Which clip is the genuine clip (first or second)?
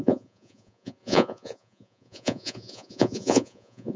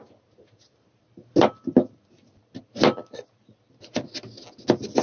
second